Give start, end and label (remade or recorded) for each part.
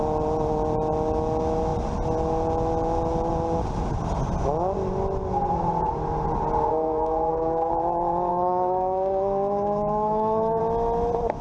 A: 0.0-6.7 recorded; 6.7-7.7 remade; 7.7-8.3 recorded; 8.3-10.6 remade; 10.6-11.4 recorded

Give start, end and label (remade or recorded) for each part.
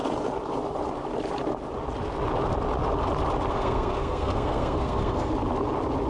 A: 0.0-3.5 recorded; 3.5-5.3 remade; 5.3-6.1 recorded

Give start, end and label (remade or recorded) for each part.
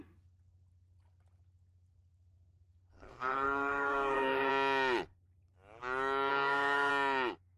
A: 0.0-2.1 recorded; 2.1-4.5 remade; 4.5-6.3 recorded; 6.3-6.9 remade; 6.9-7.6 recorded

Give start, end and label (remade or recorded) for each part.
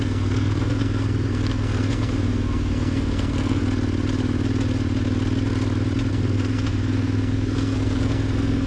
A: 0.0-3.6 remade; 3.6-6.1 recorded; 6.1-8.7 remade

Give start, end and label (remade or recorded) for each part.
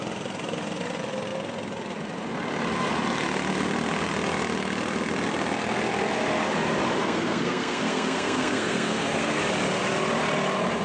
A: 0.0-7.0 recorded; 7.0-9.4 remade; 9.4-10.8 recorded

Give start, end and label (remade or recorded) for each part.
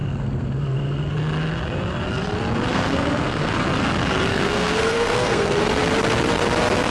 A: 0.0-1.1 remade; 1.1-2.7 recorded; 2.7-3.5 remade; 3.5-4.3 recorded; 4.3-5.6 remade; 5.6-6.9 recorded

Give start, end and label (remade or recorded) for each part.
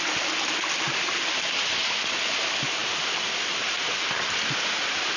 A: 0.0-5.2 recorded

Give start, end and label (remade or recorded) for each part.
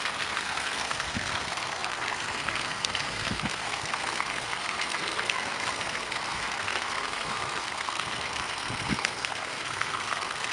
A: 0.0-10.5 remade